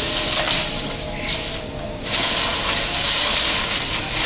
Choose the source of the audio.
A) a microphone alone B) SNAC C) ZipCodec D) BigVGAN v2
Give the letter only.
A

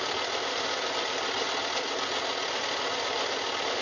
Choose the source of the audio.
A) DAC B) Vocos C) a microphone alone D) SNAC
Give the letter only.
C